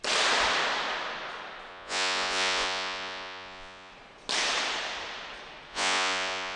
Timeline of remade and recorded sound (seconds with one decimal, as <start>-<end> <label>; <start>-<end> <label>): 0.0-1.7 recorded; 1.7-3.9 remade; 3.9-5.7 recorded; 5.7-6.6 remade

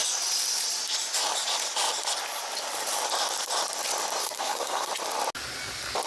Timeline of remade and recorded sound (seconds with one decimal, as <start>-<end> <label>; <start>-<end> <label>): 0.0-4.2 recorded; 4.2-4.9 remade; 4.9-6.1 recorded

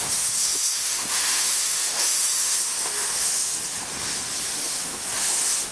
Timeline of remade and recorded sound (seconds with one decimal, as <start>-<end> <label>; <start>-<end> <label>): 0.0-3.5 remade; 3.5-4.4 recorded; 4.4-5.7 remade

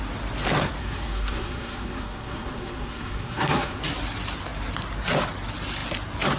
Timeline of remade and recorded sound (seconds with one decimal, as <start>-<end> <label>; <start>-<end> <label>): 0.0-0.8 recorded; 0.8-3.8 remade; 3.8-6.4 recorded